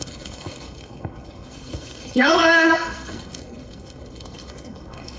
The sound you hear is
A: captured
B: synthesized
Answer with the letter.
B